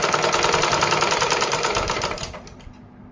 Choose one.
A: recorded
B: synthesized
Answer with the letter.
A